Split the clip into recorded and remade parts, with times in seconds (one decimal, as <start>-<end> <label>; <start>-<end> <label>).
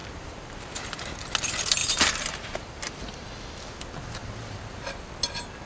0.0-0.6 remade; 0.6-1.8 recorded; 1.8-3.0 remade; 3.0-4.2 recorded; 4.2-5.1 remade; 5.1-5.7 recorded